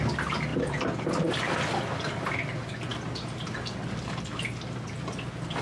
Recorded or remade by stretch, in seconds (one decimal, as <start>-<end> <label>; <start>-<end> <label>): 0.0-5.6 recorded